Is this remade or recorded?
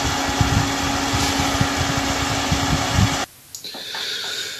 recorded